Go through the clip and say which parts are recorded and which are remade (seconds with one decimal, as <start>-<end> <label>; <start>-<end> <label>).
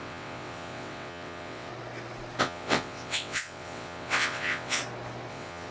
0.0-1.7 remade; 1.7-2.4 recorded; 2.4-4.8 remade; 4.8-5.3 recorded; 5.3-5.7 remade